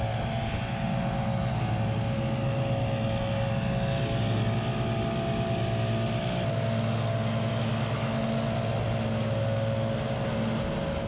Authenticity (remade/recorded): recorded